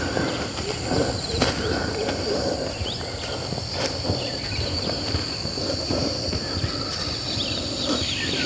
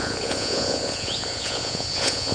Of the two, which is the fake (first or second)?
second